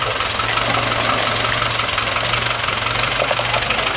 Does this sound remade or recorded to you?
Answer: recorded